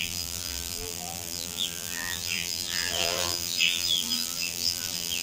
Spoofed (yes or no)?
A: yes